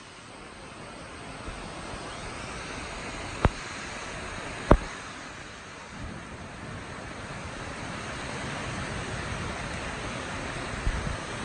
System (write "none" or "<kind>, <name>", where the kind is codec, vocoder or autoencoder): none